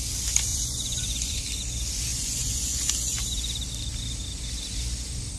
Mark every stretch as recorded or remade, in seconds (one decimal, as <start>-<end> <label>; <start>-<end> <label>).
0.0-0.5 recorded; 0.5-1.4 remade; 1.4-2.1 recorded; 2.1-2.9 remade; 2.9-5.4 recorded